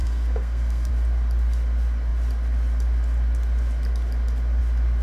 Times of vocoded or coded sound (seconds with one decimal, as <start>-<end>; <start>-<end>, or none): 0.0-0.9